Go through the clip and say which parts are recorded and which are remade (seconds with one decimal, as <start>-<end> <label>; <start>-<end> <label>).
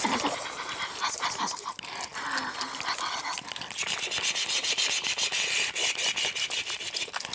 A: 0.0-7.3 recorded